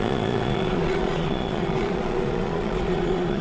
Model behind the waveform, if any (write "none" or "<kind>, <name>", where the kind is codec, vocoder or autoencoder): vocoder, Vocos